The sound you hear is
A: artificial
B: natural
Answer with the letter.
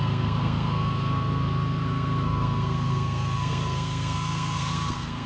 A